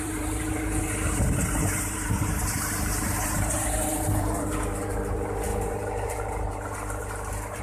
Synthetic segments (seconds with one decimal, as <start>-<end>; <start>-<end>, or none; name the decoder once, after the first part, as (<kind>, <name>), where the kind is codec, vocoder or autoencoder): 0.0-7.6 (vocoder, BigVGAN v2)